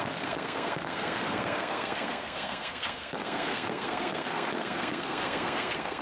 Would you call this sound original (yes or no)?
no